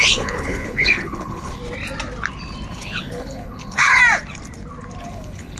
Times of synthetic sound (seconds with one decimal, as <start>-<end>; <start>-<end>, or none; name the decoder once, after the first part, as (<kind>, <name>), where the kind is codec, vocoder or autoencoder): 0.0-1.6 (codec, HILCodec); 2.7-4.0; 5.0-5.6